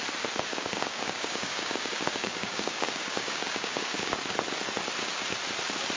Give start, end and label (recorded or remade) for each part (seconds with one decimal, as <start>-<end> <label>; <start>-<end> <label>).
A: 0.0-0.5 recorded; 0.5-4.1 remade; 4.1-6.0 recorded